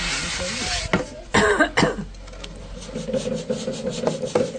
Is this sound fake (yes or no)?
no